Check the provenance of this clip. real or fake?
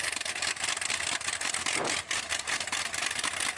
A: real